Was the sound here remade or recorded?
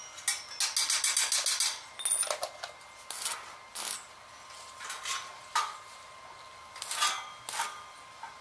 recorded